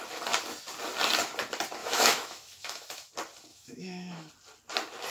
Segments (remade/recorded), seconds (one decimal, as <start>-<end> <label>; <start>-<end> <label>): 0.0-1.8 recorded; 1.8-3.1 remade; 3.1-3.5 recorded; 3.5-4.3 remade; 4.3-5.1 recorded